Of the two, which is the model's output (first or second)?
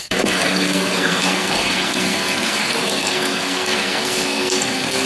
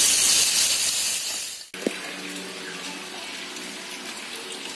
first